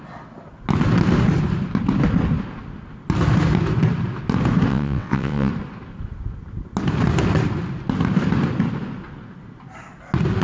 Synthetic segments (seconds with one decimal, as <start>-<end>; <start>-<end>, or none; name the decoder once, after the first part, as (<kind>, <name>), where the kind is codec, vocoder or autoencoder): 4.7-5.5 (vocoder, WaveNeXt)